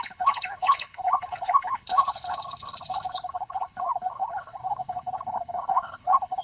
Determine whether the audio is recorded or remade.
remade